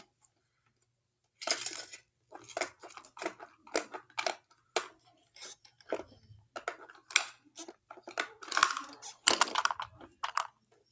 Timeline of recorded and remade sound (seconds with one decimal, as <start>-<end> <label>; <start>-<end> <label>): 0.0-10.9 recorded